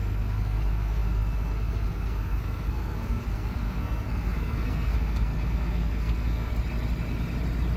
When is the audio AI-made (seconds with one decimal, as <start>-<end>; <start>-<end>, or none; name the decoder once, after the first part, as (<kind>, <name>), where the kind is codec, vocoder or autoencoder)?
0.0-6.5 (codec, SNAC)